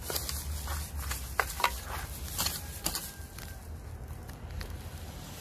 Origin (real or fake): real